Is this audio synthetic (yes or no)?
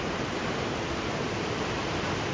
no